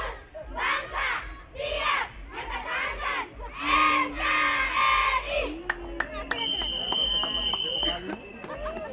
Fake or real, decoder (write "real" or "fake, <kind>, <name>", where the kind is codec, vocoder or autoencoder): real